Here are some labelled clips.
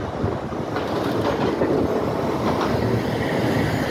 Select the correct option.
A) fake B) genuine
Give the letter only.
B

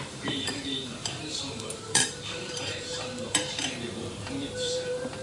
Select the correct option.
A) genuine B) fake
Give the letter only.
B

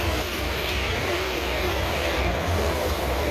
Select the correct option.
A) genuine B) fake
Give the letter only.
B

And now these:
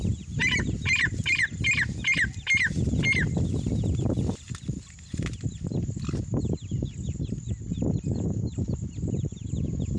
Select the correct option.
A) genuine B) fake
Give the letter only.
A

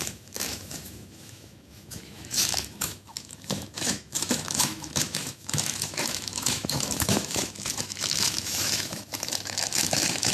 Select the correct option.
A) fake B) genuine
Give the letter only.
A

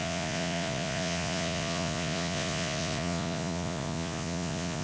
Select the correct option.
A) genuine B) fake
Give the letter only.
B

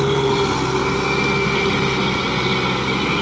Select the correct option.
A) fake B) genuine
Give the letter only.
B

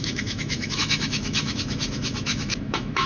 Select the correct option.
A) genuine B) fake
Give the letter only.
B